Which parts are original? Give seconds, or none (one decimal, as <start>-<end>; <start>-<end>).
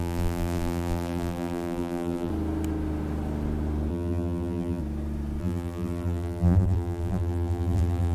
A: 2.3-3.9; 4.8-5.4